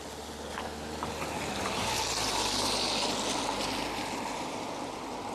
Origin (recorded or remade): recorded